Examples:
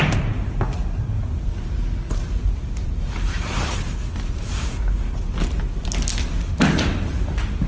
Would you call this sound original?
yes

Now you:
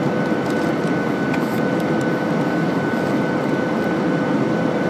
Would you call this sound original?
yes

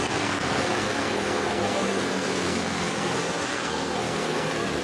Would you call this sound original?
no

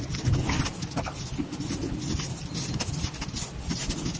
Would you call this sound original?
yes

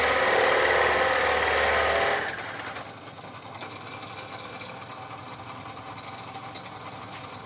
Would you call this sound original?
yes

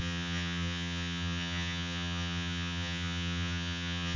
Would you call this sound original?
no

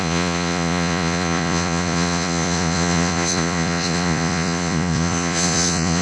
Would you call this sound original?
no